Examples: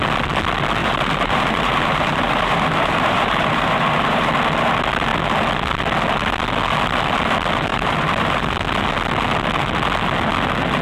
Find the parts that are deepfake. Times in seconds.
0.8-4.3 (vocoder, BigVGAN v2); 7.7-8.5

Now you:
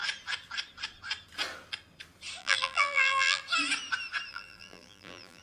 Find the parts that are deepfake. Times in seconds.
2.4-3.4 (vocoder, BigVGAN v2); 4.3-5.4

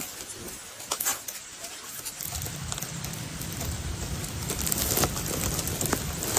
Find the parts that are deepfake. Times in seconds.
1.1-4.6 (vocoder, BigVGAN v2)

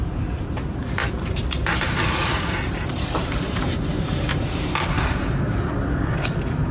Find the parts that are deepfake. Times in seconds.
0.0-0.8 (vocoder, BigVGAN v2); 1.7-5.7